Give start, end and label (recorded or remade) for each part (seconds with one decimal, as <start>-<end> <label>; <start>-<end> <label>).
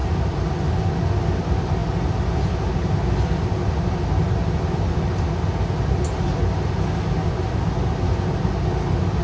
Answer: 0.0-9.2 recorded